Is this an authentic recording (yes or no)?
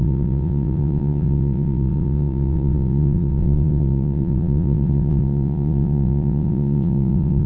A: no